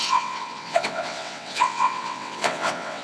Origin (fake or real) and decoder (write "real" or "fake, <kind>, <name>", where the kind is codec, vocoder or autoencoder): fake, vocoder, WaveNeXt